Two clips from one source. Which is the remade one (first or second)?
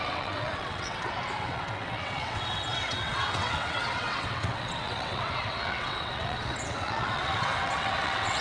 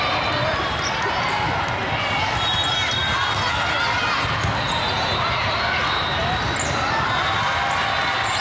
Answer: first